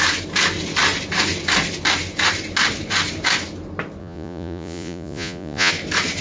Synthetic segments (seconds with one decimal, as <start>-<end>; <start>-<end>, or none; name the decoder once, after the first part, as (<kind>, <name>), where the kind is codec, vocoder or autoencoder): 4.0-5.7 (vocoder, Vocos)